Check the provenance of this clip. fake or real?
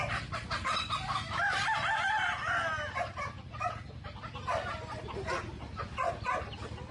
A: real